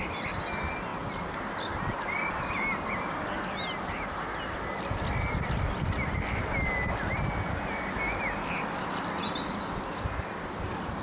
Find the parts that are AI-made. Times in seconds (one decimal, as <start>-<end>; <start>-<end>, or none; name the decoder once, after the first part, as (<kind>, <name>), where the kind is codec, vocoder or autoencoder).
none